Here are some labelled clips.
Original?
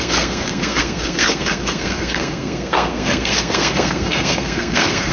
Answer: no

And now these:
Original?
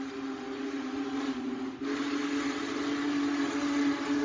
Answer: yes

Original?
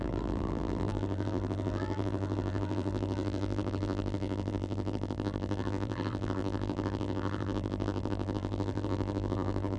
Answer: no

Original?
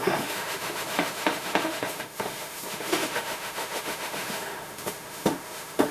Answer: no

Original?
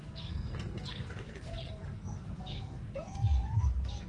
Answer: no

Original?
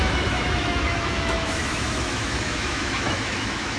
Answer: no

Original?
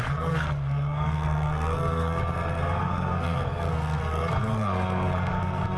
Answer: no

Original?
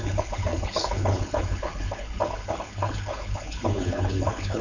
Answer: no